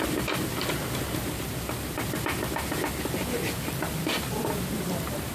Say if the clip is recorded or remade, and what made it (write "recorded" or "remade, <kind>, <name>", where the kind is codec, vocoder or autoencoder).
recorded